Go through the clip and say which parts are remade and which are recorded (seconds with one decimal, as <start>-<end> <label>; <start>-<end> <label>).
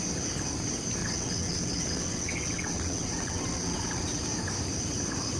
0.0-1.0 recorded; 1.0-4.2 remade; 4.2-5.4 recorded